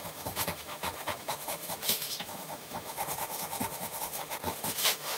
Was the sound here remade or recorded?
remade